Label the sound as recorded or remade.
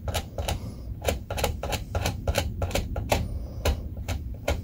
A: remade